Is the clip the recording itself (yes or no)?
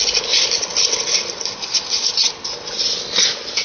yes